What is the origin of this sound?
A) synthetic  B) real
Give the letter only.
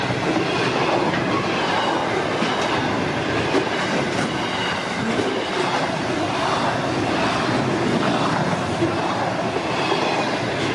B